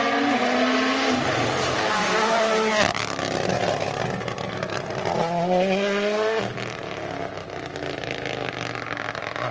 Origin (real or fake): real